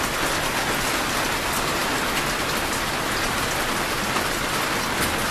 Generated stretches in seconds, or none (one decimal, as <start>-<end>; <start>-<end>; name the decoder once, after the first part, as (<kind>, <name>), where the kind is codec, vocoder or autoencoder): none